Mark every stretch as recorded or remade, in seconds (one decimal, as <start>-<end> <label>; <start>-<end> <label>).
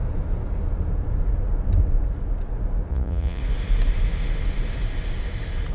0.0-2.9 recorded; 2.9-3.4 remade; 3.4-5.7 recorded